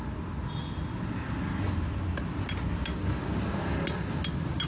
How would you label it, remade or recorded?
recorded